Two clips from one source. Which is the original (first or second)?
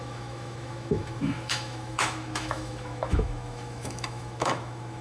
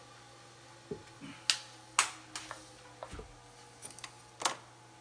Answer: second